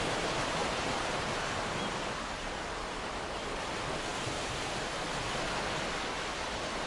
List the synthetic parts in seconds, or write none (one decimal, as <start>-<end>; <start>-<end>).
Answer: 0.6-1.3; 2.4-3.2; 4.1-4.9